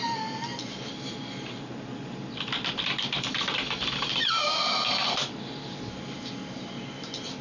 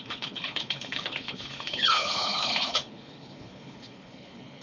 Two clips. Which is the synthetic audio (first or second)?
second